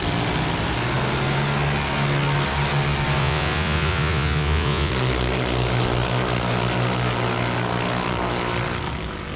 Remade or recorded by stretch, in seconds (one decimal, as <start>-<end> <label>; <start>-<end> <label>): 0.0-3.2 recorded; 3.2-4.9 remade; 4.9-9.4 recorded